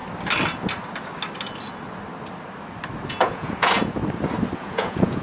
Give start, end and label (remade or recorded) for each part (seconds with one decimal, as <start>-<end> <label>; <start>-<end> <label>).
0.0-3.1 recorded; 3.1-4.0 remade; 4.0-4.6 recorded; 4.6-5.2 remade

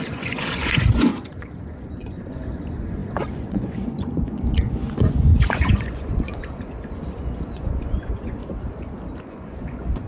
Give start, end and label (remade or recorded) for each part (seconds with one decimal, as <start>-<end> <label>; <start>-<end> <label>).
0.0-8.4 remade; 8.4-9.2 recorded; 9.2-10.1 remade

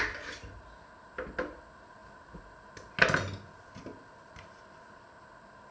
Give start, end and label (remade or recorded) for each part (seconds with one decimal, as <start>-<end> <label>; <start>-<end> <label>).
0.0-5.7 recorded

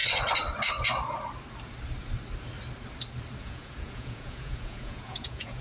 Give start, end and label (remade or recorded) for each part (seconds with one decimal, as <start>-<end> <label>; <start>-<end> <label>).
0.0-3.4 recorded; 3.4-5.6 remade

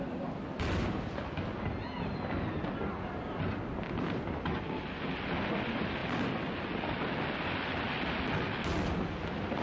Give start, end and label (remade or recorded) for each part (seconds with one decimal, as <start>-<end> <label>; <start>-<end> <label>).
0.0-9.6 recorded

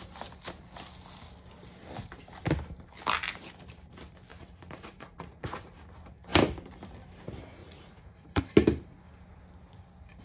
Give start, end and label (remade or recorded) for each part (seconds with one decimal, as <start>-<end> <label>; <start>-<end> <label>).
0.0-4.3 recorded; 4.3-5.7 remade; 5.7-7.6 recorded; 7.6-8.4 remade; 8.4-10.2 recorded

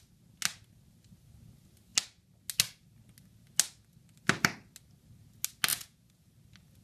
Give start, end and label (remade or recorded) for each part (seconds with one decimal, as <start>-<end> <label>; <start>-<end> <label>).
0.0-5.7 recorded; 5.7-6.3 remade; 6.3-6.8 recorded

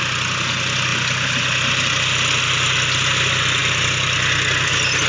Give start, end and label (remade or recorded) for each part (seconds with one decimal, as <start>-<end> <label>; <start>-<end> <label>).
0.0-5.1 recorded